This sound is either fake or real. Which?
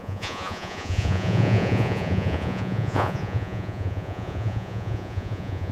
fake